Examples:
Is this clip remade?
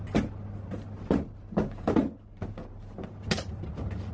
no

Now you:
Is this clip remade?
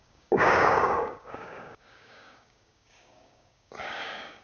yes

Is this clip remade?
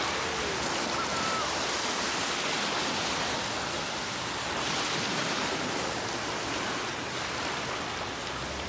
no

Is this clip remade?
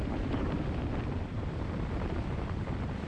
yes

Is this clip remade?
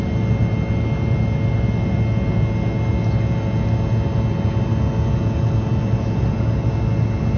no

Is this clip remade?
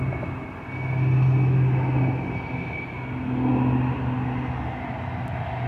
no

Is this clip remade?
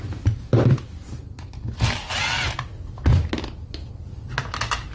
no